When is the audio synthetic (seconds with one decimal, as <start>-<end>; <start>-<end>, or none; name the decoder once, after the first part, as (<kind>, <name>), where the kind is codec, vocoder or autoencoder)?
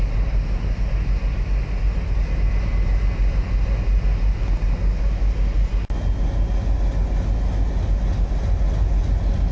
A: none